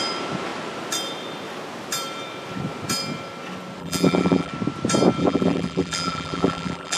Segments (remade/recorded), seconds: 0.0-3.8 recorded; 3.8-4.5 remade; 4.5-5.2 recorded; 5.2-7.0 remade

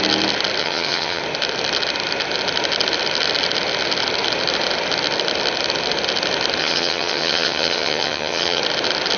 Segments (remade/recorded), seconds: 0.0-0.6 recorded; 0.6-1.2 remade; 1.2-6.6 recorded; 6.6-8.6 remade; 8.6-9.2 recorded

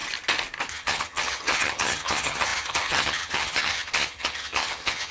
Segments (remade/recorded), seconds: 0.0-0.7 recorded; 0.7-5.1 remade

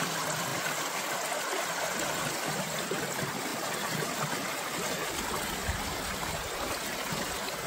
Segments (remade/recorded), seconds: 0.0-7.7 recorded

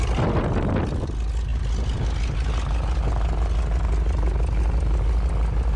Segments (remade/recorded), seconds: 0.0-5.8 recorded

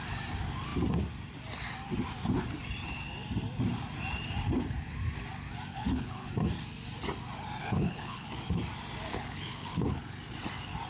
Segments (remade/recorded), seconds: 0.0-5.7 recorded; 5.7-6.3 remade; 6.3-7.6 recorded; 7.6-8.3 remade; 8.3-9.1 recorded; 9.1-10.0 remade; 10.0-10.9 recorded